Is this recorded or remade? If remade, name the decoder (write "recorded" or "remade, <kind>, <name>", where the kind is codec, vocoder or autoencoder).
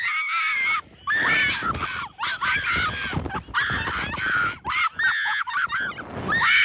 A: recorded